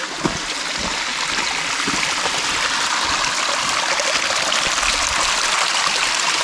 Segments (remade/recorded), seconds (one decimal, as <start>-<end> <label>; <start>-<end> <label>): 0.0-6.4 recorded